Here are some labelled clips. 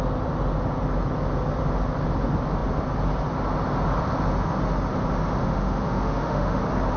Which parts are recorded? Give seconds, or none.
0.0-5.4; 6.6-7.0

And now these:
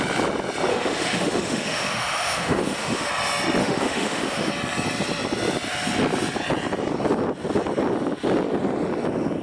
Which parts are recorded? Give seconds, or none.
0.0-0.7; 3.1-3.6; 4.5-9.4

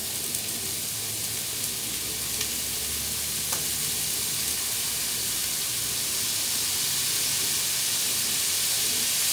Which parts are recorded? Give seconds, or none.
0.0-9.3